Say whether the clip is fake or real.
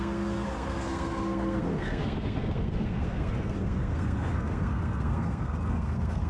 fake